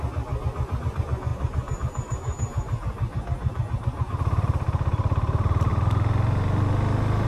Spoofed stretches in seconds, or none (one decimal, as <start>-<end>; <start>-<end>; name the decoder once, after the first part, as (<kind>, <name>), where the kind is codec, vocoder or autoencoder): 1.3-5.7 (vocoder, BigVGAN v2)